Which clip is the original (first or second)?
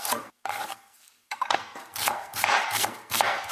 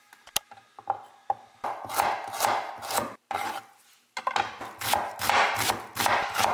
second